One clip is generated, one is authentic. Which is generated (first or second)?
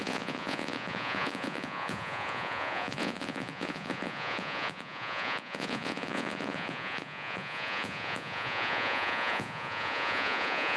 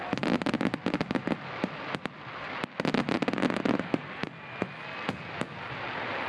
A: first